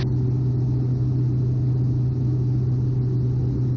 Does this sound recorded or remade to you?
recorded